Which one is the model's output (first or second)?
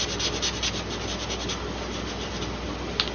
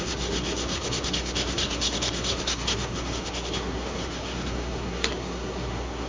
second